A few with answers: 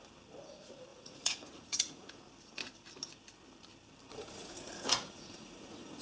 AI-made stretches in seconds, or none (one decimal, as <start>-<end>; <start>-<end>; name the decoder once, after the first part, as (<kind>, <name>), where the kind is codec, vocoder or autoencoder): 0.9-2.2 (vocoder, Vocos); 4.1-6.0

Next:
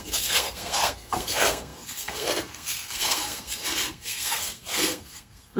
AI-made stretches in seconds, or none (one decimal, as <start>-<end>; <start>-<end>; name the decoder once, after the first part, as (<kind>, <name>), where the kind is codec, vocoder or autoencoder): 0.0-5.6 (codec, SNAC)

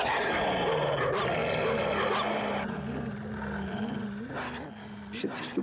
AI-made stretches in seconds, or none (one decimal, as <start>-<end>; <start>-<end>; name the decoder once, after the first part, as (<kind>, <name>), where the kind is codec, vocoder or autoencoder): none

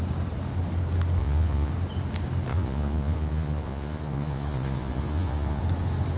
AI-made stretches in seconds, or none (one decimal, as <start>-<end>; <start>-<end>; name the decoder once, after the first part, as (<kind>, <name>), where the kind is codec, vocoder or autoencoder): 1.2-1.7 (vocoder, Vocos); 2.5-5.6